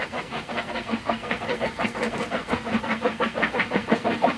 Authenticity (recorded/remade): remade